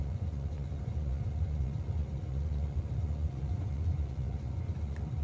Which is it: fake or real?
fake